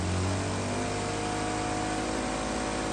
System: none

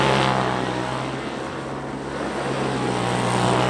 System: none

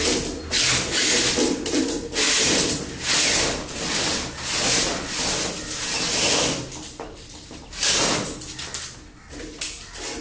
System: none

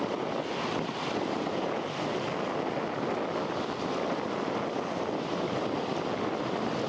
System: none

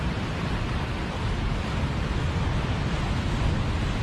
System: none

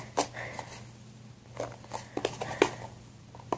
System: none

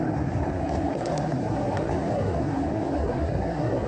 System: codec, SNAC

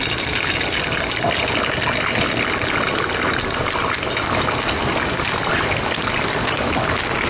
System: none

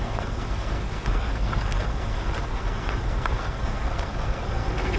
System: codec, SNAC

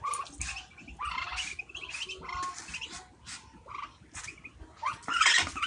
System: none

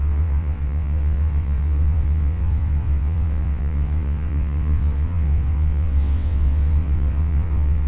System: vocoder, WaveNeXt